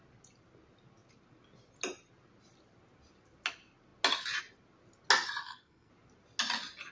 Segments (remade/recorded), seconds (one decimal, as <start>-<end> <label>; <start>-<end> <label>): 0.0-5.4 recorded; 5.4-5.9 remade; 5.9-6.9 recorded